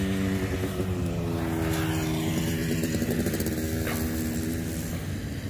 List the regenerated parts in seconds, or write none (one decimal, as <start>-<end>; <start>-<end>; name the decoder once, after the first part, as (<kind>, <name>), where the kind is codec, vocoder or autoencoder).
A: none